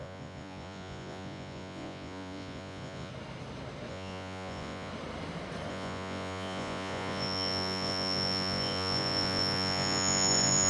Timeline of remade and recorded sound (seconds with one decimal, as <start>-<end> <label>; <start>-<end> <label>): 0.0-3.1 remade; 3.1-3.9 recorded; 3.9-4.9 remade; 4.9-5.7 recorded; 5.7-10.7 remade